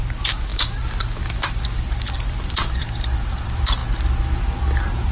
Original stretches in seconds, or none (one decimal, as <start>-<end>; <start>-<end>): 0.5-1.4; 3.8-5.1